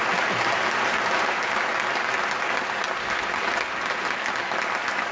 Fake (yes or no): no